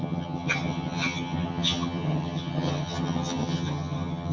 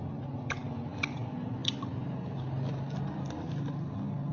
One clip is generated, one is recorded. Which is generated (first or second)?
first